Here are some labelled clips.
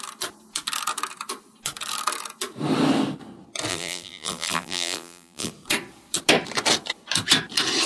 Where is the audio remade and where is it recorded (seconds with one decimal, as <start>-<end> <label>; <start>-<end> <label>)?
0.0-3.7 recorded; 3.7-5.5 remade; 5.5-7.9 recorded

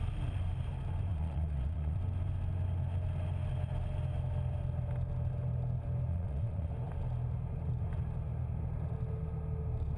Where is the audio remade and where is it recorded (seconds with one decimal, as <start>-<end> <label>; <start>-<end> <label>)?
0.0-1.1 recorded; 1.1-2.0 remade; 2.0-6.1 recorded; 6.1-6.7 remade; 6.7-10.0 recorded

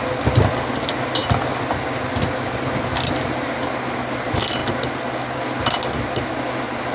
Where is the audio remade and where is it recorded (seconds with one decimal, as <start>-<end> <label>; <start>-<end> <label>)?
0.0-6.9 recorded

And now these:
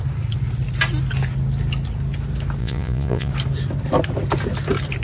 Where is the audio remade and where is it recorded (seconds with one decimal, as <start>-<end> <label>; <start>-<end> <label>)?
0.0-2.6 recorded; 2.6-3.3 remade; 3.3-5.0 recorded

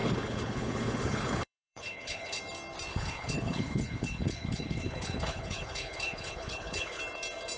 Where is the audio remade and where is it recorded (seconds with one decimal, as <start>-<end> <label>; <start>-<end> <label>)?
0.0-2.4 remade; 2.4-2.9 recorded; 2.9-7.0 remade; 7.0-7.6 recorded

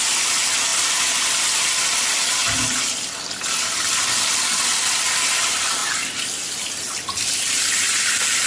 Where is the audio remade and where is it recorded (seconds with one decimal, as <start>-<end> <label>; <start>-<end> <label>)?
0.0-8.5 recorded